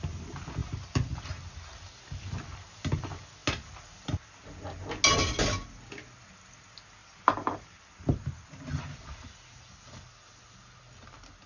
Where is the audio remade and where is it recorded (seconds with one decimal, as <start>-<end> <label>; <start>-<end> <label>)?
0.0-0.6 recorded; 0.6-1.2 remade; 1.2-7.0 recorded; 7.0-7.8 remade; 7.8-11.5 recorded